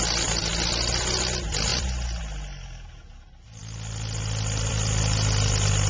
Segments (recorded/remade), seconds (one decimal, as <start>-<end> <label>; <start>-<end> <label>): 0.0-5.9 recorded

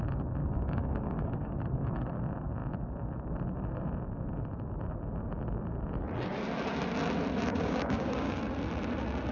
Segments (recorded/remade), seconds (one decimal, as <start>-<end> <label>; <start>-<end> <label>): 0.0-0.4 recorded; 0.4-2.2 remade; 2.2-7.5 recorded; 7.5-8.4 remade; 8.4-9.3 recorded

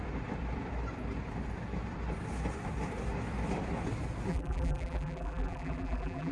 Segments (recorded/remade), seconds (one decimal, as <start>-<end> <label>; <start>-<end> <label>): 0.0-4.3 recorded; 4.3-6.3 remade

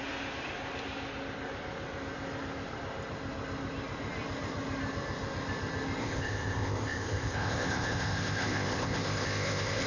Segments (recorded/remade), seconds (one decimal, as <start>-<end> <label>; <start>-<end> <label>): 0.0-6.0 recorded; 6.0-9.9 remade